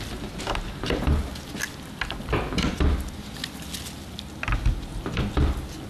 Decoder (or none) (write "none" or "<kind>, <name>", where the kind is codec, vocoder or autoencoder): none